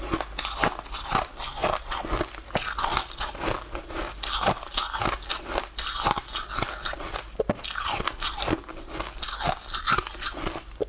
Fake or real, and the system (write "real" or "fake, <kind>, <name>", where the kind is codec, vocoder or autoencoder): real